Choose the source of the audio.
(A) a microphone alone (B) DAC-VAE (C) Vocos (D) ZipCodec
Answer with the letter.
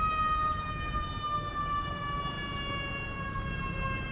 A